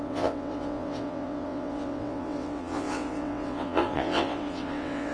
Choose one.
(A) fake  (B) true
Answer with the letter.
A